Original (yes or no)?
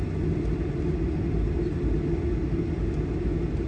yes